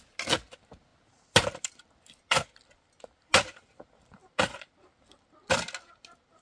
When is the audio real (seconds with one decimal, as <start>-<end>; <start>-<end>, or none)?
0.0-6.4